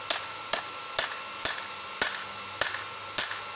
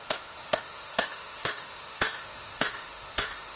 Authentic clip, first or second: first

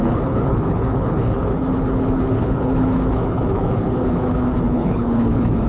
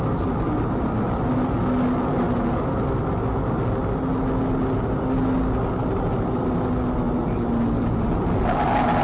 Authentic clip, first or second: second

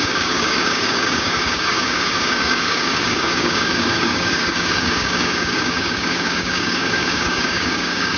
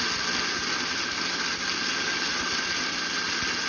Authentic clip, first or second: second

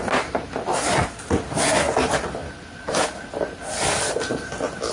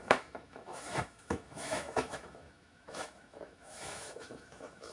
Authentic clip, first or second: first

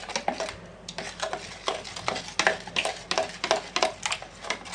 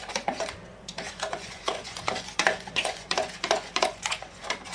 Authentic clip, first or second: first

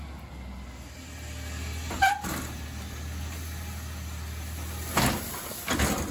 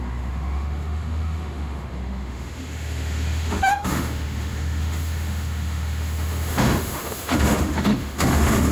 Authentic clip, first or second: first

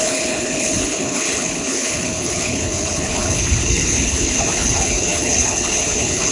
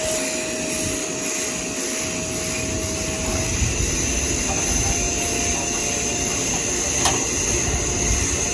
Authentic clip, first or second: second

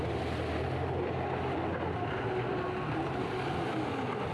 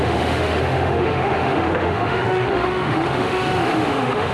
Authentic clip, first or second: first